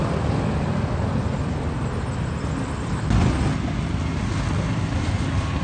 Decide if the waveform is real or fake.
real